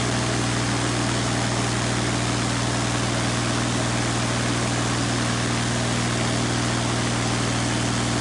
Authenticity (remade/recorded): recorded